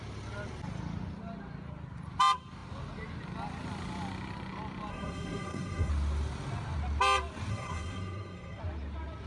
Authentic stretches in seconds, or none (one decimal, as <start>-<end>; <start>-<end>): 0.0-4.9; 5.9-7.5; 8.6-9.3